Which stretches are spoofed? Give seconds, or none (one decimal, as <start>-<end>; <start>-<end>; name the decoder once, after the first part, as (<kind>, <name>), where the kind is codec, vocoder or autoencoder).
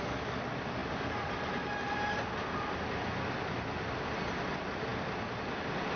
none